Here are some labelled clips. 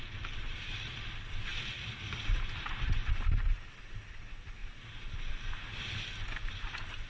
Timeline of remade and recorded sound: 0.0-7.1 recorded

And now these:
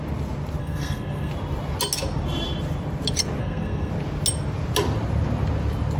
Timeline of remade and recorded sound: 0.0-0.6 recorded; 0.6-1.3 remade; 1.3-3.4 recorded; 3.4-3.9 remade; 3.9-6.0 recorded

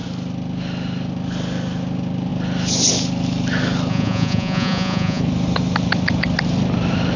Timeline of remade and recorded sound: 0.0-3.9 recorded; 3.9-5.2 remade; 5.2-7.2 recorded

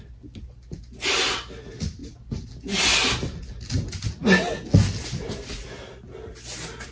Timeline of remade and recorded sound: 0.0-6.9 recorded

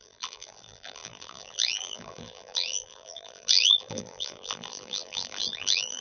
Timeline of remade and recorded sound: 0.0-6.0 remade

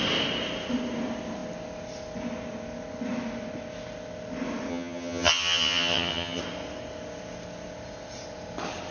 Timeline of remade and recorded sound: 0.0-4.7 recorded; 4.7-6.4 remade; 6.4-8.9 recorded